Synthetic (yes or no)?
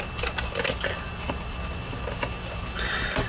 no